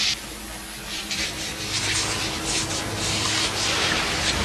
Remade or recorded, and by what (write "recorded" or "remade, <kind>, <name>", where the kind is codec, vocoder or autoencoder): recorded